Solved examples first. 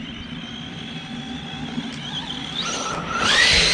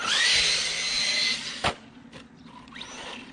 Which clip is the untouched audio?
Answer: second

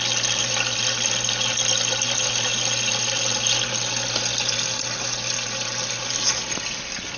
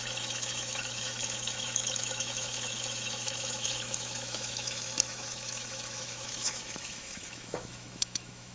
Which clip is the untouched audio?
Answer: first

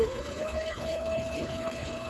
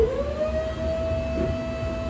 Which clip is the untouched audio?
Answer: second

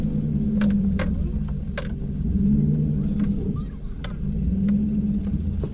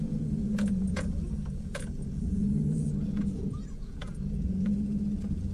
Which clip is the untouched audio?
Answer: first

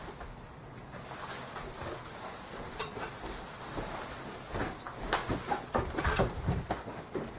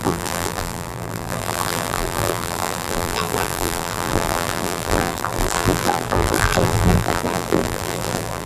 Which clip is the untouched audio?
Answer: first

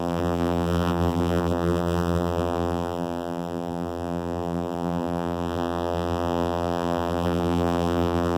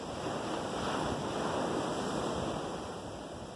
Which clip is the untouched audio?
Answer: second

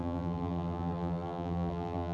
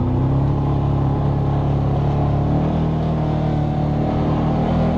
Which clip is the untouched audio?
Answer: second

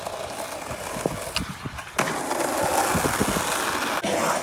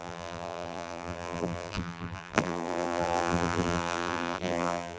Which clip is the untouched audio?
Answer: first